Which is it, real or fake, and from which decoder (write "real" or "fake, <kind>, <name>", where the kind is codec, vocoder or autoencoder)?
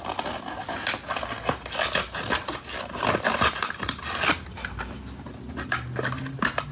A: real